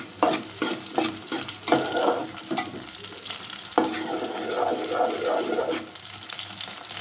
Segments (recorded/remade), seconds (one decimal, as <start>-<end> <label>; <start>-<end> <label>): 0.0-7.0 recorded